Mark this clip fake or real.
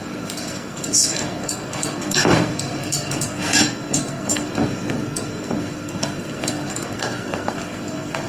fake